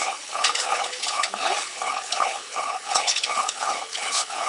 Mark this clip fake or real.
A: fake